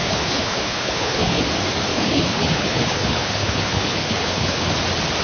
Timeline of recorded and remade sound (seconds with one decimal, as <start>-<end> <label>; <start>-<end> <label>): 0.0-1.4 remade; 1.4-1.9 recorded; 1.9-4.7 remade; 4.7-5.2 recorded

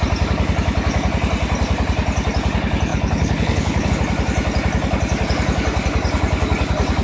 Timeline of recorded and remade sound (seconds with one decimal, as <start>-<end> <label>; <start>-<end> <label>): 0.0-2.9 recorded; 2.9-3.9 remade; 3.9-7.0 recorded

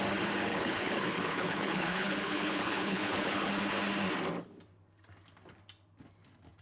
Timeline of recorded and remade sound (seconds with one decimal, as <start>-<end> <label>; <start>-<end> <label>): 0.0-0.5 recorded; 0.5-3.5 remade; 3.5-6.6 recorded

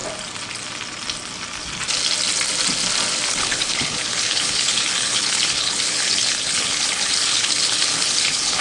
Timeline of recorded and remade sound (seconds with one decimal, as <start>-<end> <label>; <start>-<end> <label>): 0.0-3.4 recorded; 3.4-8.6 remade